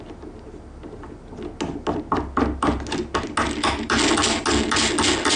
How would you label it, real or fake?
real